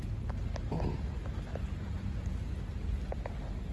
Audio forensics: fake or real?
real